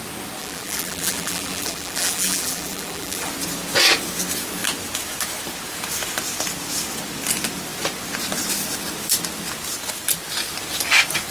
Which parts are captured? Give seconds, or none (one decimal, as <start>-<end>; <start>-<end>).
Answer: 0.0-0.4; 3.3-11.3